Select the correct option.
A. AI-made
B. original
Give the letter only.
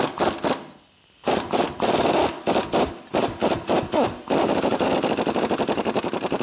B